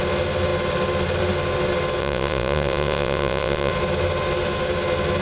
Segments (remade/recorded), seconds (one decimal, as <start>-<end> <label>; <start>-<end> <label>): 0.0-2.0 recorded; 2.0-3.7 remade; 3.7-5.2 recorded